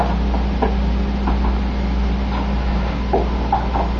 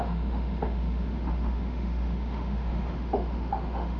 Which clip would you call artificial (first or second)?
second